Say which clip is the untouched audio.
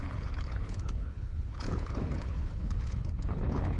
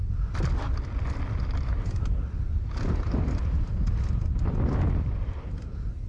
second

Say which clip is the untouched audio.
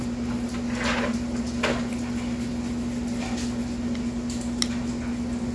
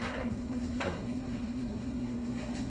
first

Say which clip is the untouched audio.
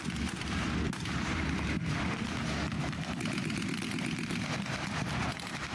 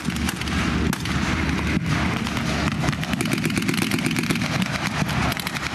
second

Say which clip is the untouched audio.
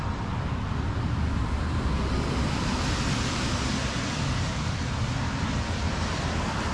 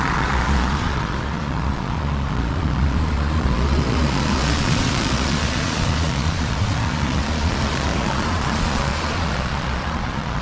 first